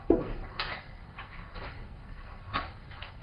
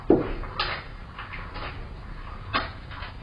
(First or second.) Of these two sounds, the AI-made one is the first